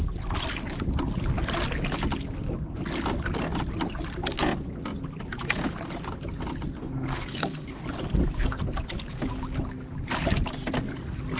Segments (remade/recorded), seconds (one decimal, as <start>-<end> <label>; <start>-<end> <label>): 0.0-6.8 recorded; 6.8-7.8 remade; 7.8-11.4 recorded